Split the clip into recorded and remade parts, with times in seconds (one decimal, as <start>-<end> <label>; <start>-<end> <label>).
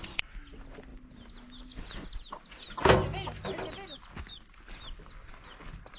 0.0-0.9 remade; 0.9-4.0 recorded; 4.0-6.0 remade